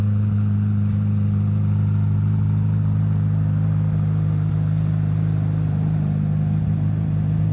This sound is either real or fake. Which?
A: real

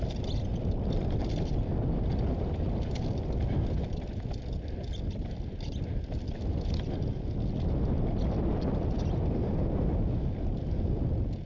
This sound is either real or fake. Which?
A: real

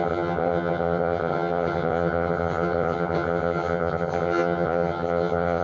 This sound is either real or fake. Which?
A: fake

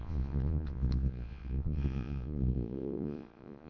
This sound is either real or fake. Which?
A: fake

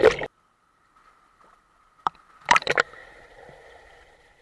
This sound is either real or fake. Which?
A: fake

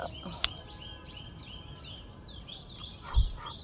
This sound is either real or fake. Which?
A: real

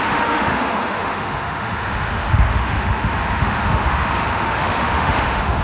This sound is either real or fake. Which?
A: fake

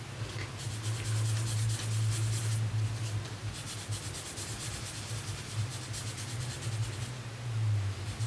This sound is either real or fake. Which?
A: real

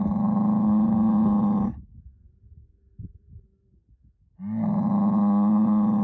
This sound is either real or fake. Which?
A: real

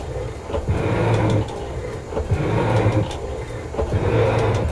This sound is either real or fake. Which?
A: real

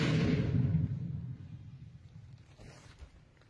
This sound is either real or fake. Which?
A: real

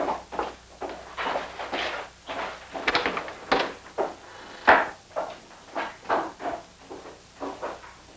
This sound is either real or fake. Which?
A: real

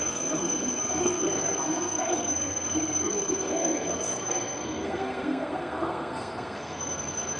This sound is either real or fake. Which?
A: fake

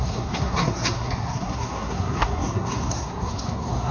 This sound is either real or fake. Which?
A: fake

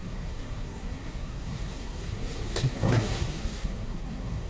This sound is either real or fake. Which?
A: fake